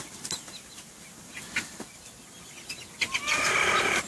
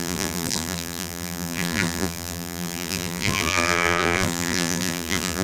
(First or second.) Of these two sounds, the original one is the first